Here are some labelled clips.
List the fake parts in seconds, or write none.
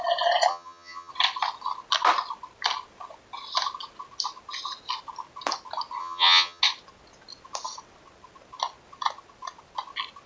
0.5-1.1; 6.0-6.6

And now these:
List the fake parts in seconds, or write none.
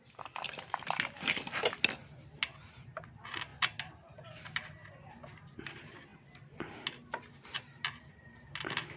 none